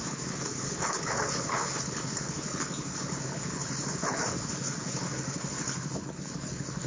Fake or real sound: fake